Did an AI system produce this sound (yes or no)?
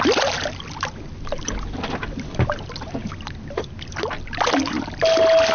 no